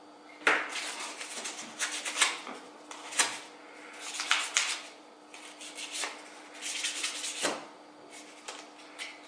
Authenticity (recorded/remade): recorded